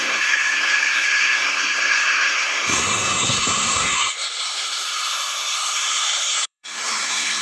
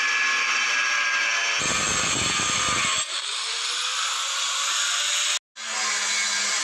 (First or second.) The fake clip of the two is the first